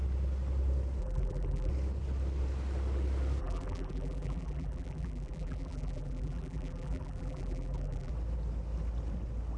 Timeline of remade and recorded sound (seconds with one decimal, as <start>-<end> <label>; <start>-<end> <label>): 0.0-1.0 recorded; 1.0-1.7 remade; 1.7-3.4 recorded; 3.4-8.1 remade; 8.1-9.6 recorded

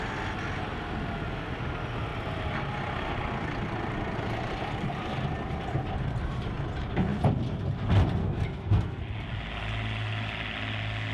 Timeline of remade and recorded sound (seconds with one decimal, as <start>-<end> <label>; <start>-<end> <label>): 0.0-8.2 recorded; 8.2-9.0 remade; 9.0-11.1 recorded

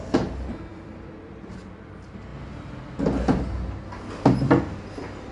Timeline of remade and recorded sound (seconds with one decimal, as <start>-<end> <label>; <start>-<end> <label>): 0.0-0.7 recorded; 0.7-1.8 remade; 1.8-5.3 recorded